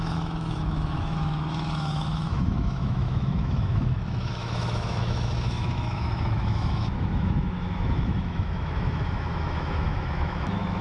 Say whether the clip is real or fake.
fake